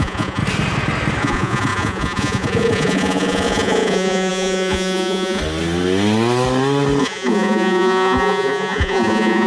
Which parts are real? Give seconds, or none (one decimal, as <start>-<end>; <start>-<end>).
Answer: 0.4-1.2; 5.4-7.0